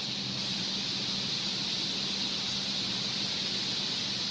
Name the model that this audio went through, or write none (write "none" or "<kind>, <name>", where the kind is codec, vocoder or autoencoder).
none